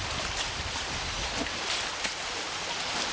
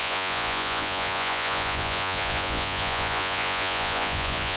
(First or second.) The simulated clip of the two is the second